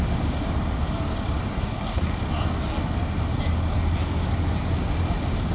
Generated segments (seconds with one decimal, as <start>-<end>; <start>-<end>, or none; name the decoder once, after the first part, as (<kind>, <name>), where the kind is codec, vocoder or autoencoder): 1.5-2.1 (codec, SNAC)